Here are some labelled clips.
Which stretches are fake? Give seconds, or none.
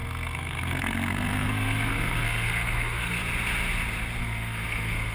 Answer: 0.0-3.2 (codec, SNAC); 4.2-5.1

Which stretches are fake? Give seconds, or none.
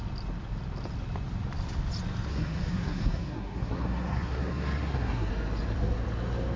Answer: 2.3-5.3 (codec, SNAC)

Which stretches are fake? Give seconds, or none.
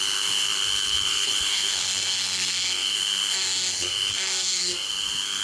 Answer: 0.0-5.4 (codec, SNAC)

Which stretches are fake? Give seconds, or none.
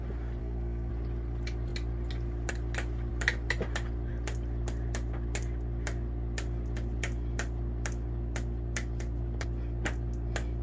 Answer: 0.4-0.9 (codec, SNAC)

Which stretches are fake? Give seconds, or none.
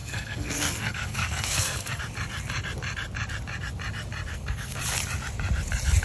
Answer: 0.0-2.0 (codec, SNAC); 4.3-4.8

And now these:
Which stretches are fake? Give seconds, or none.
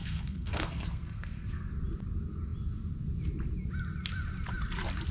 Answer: 0.0-1.7 (codec, SNAC)